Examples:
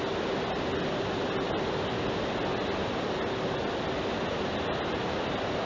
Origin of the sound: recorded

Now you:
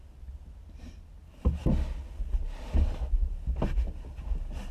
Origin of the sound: recorded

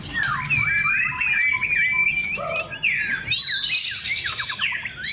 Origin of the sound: recorded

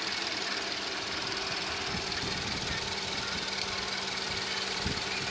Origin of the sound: recorded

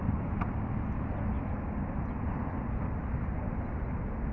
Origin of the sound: recorded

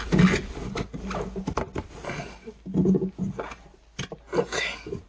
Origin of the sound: recorded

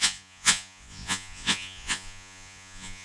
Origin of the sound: remade